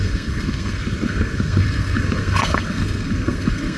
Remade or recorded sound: remade